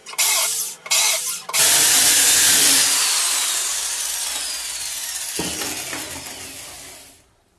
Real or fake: real